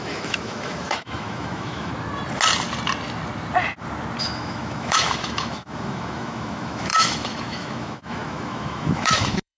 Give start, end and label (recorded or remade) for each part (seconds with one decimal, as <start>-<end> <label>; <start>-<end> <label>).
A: 0.0-1.9 remade; 1.9-4.2 recorded; 4.2-9.6 remade